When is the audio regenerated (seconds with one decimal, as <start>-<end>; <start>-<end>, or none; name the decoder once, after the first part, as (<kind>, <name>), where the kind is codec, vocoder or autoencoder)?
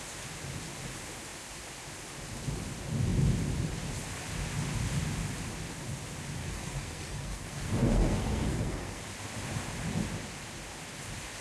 6.4-9.0 (codec, SNAC)